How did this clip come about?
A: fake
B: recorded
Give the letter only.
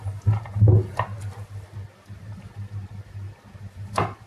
B